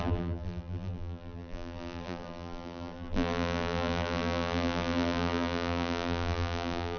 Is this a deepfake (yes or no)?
yes